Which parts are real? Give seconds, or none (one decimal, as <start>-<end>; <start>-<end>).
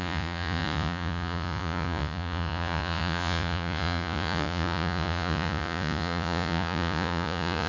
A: none